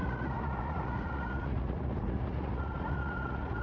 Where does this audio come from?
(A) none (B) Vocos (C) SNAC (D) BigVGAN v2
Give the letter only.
B